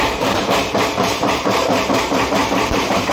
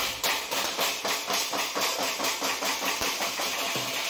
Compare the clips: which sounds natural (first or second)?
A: second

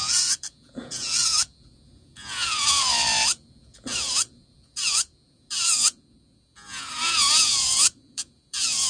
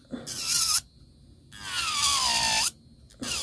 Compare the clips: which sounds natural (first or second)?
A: second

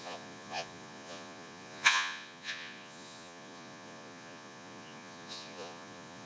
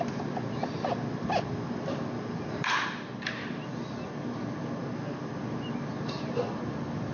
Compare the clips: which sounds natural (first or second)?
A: second